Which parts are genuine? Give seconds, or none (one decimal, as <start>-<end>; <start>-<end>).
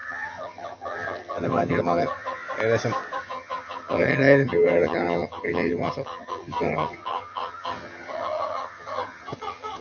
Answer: 2.4-3.2